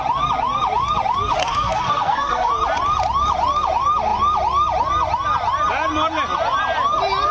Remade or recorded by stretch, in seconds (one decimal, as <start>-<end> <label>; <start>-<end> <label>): 0.0-1.4 recorded; 1.4-2.5 remade; 2.5-7.3 recorded